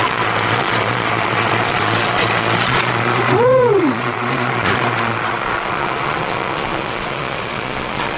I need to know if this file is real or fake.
fake